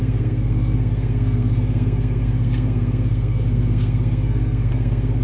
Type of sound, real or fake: fake